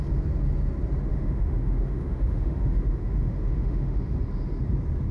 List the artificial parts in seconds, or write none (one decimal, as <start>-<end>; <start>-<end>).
1.1-4.2